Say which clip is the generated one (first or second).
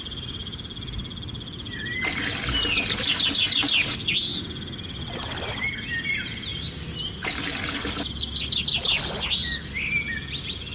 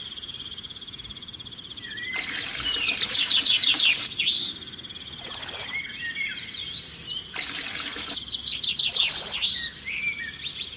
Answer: second